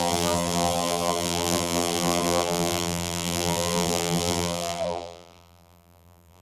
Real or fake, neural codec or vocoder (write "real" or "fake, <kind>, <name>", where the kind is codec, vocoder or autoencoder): fake, vocoder, BigVGAN v2